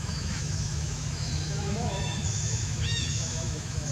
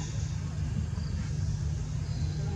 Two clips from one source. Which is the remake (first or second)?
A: first